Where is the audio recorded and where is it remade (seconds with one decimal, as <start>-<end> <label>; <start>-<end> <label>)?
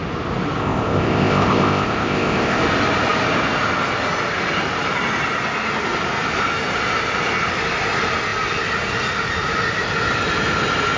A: 0.0-0.6 recorded; 0.6-2.6 remade; 2.6-11.0 recorded